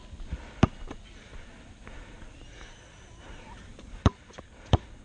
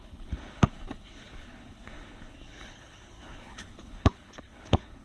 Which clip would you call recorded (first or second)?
first